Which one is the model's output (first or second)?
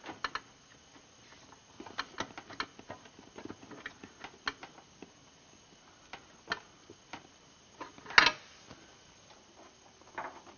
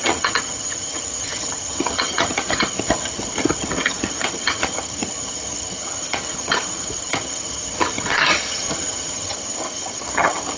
second